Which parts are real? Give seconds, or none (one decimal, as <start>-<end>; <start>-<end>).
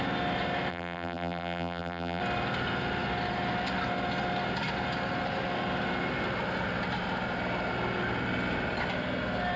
0.0-0.7; 2.2-9.6